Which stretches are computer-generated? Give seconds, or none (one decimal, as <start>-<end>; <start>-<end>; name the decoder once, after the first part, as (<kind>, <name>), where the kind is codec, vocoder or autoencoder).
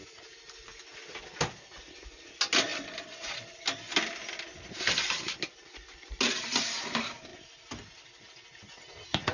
none